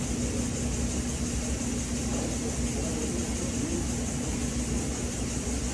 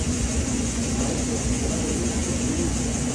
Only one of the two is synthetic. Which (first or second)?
second